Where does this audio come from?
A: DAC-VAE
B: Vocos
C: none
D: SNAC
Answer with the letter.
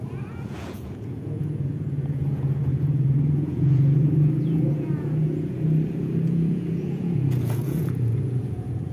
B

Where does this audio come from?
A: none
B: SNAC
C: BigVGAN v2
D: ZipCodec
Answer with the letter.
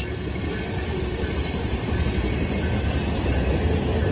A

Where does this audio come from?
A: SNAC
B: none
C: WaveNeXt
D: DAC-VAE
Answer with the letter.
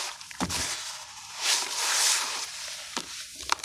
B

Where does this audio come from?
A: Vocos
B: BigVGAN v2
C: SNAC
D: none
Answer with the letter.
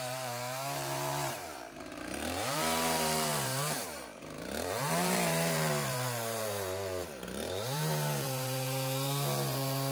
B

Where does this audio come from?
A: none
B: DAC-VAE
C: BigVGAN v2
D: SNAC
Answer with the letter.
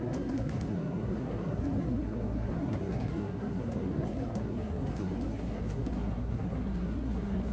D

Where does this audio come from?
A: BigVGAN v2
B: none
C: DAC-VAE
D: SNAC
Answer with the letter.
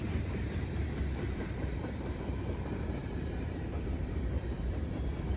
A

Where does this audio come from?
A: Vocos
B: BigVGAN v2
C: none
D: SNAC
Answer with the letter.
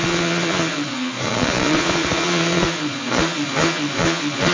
A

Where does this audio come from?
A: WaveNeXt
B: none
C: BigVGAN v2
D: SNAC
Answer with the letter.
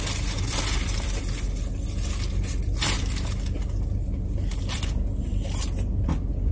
B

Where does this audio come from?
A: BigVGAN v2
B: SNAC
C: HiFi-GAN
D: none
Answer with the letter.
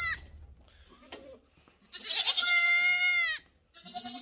D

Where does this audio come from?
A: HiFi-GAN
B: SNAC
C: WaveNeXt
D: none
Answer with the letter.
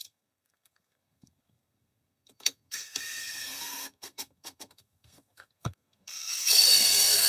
B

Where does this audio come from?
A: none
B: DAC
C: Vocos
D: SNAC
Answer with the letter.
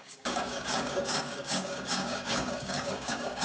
B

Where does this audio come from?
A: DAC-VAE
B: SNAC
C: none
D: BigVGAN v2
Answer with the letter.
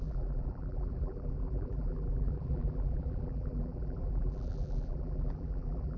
D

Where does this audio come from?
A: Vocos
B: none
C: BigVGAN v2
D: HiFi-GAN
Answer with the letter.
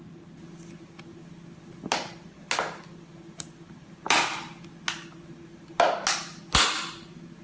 B